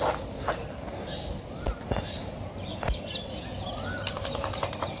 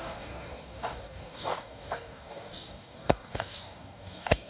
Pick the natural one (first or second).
first